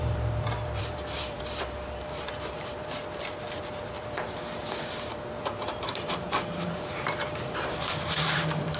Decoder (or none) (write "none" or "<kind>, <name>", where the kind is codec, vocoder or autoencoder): vocoder, BigVGAN v2